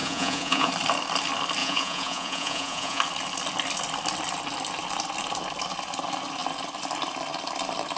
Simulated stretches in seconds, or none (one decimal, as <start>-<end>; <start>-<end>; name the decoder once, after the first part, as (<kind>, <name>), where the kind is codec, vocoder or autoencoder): 0.0-0.7 (vocoder, Vocos); 1.6-3.0